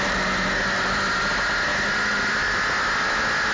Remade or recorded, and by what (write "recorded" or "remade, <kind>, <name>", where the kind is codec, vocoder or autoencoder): remade, vocoder, BigVGAN v2